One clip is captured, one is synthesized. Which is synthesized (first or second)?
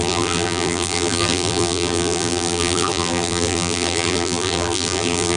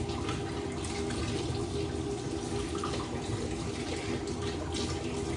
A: first